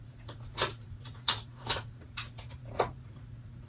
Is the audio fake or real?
fake